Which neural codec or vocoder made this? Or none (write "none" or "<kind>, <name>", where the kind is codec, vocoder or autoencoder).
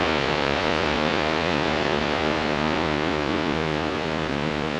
vocoder, Vocos